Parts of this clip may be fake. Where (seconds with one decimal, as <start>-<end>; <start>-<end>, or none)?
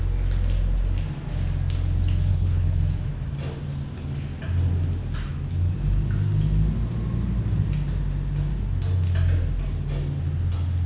2.3-2.8